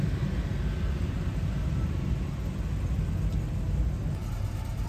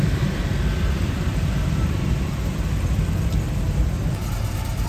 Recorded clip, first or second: first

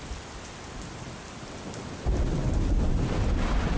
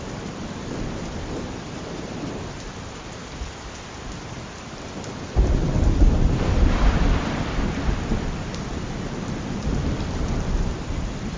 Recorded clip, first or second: first